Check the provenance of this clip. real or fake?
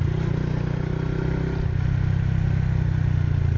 real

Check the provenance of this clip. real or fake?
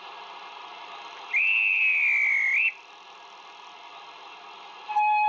real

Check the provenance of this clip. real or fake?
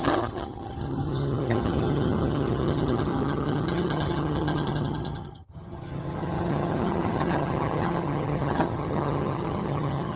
fake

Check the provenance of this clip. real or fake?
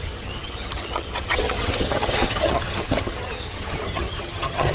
fake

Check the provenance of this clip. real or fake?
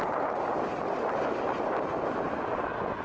real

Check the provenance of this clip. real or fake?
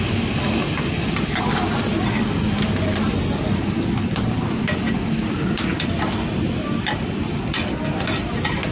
real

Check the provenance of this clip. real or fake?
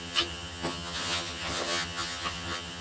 fake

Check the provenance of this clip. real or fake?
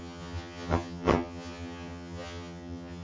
fake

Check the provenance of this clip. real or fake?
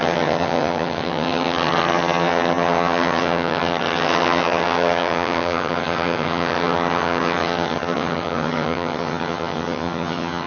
fake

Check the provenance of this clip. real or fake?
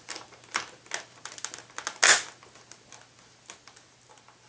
real